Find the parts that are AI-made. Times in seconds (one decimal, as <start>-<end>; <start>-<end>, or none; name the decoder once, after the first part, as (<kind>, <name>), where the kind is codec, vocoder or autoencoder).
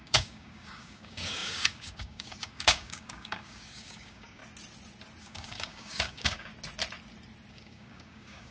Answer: 0.0-4.4 (codec, DAC); 5.2-6.5; 7.5-8.5